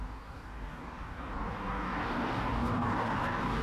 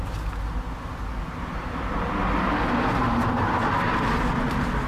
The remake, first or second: first